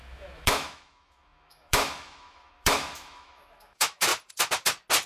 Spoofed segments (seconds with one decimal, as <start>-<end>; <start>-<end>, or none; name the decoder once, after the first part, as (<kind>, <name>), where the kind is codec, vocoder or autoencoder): 0.0-4.1 (autoencoder, DAC-VAE)